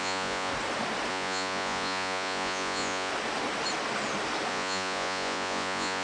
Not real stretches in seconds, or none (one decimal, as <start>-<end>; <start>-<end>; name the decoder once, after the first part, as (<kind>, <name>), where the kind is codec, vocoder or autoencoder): 0.0-0.5 (vocoder, Vocos); 1.1-3.1; 4.5-6.0